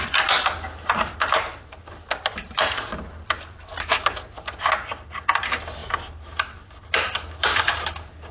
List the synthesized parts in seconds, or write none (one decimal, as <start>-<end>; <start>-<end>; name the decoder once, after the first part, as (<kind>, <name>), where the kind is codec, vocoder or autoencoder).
none